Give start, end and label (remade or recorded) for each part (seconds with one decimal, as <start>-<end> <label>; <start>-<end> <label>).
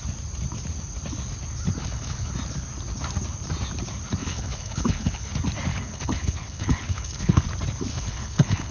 0.0-1.8 recorded; 1.8-2.3 remade; 2.3-4.2 recorded; 4.2-5.3 remade; 5.3-5.7 recorded; 5.7-7.4 remade; 7.4-7.9 recorded; 7.9-8.7 remade